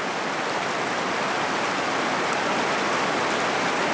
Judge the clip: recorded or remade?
recorded